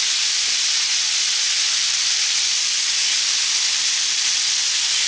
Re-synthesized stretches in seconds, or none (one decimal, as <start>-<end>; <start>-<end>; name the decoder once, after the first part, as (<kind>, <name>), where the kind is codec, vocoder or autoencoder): none